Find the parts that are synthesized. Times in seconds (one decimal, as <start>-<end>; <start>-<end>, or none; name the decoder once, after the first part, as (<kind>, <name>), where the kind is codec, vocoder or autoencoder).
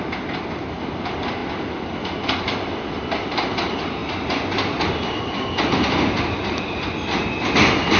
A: 4.0-6.9 (vocoder, BigVGAN v2)